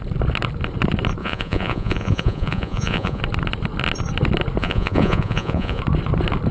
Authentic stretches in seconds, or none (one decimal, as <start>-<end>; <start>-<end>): 0.0-1.2; 3.2-4.6; 5.8-6.5